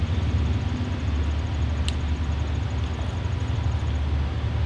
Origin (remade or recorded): recorded